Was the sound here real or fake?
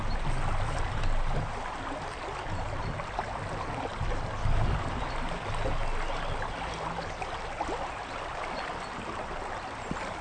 real